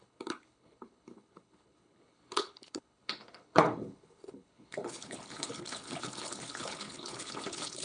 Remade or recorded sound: remade